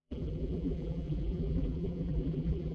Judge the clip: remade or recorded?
remade